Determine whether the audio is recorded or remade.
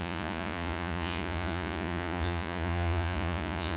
remade